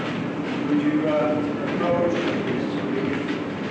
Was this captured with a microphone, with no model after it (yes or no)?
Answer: yes